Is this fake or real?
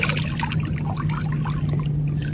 real